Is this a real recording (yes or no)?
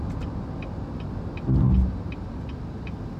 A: yes